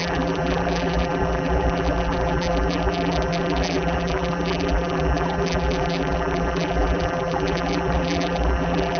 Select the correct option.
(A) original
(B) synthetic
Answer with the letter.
B